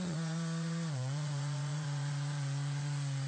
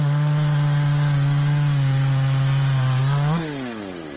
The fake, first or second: first